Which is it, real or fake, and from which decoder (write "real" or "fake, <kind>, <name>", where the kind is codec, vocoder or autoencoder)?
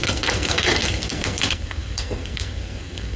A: fake, codec, SNAC